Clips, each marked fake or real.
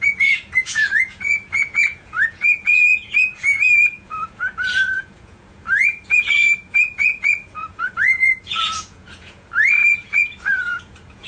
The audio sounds fake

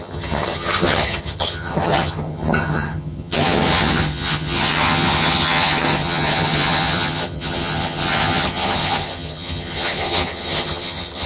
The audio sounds fake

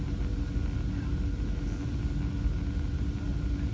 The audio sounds real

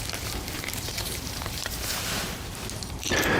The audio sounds fake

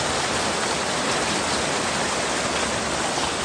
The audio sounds real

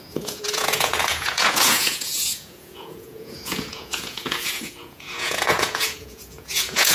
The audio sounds fake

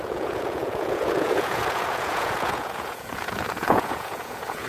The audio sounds fake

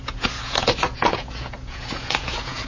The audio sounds fake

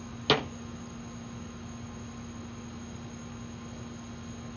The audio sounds real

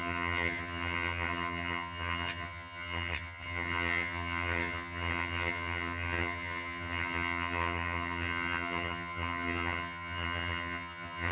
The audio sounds fake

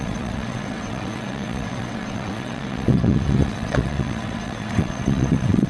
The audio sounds fake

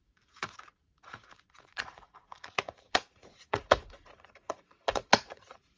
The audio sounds fake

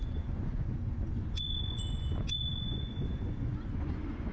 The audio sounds fake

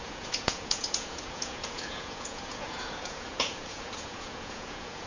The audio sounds fake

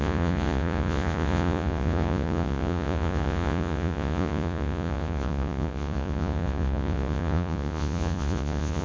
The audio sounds fake